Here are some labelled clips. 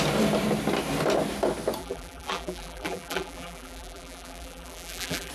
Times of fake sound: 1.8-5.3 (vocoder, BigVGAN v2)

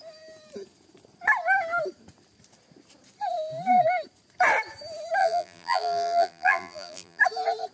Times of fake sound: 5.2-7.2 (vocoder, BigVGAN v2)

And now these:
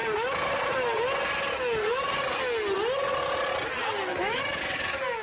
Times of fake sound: 4.1-4.6 (autoencoder, DAC-VAE)